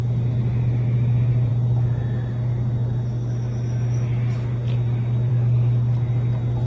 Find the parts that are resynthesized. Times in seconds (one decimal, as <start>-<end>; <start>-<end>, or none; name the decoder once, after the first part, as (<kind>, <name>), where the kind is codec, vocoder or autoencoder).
none